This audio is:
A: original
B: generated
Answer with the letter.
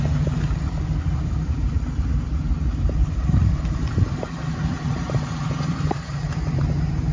B